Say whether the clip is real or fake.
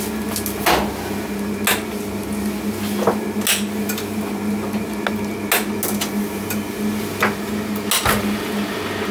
real